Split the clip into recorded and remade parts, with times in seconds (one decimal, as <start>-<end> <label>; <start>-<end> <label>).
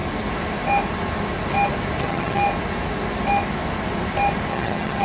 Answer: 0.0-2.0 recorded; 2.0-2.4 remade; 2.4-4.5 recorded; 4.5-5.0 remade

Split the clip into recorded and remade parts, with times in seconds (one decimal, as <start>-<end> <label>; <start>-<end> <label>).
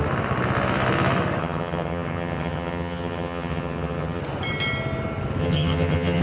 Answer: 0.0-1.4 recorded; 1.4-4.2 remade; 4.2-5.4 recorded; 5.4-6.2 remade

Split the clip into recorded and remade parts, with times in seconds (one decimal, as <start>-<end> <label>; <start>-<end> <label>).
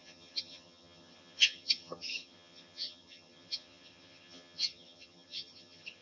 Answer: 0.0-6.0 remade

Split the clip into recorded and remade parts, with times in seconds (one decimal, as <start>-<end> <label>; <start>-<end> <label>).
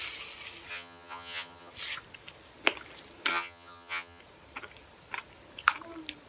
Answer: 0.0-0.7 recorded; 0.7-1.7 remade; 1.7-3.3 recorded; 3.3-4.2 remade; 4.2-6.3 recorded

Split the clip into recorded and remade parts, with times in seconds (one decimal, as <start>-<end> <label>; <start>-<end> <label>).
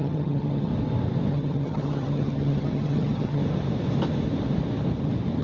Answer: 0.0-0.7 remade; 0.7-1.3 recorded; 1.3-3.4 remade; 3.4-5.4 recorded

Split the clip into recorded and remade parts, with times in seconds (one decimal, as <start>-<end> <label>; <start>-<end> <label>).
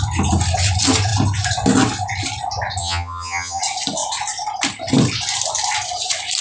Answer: 0.0-2.8 recorded; 2.8-3.6 remade; 3.6-6.4 recorded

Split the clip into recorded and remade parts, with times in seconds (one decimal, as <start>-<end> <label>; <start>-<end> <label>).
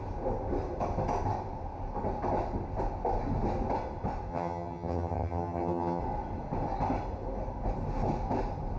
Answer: 0.0-4.3 recorded; 4.3-6.0 remade; 6.0-8.8 recorded